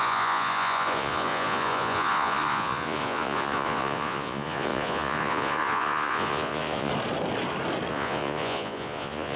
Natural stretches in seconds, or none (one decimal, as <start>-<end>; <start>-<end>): 6.9-7.9